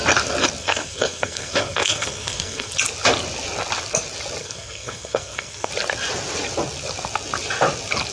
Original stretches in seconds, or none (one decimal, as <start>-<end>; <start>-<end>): 0.0-0.6; 2.7-4.4; 5.7-8.1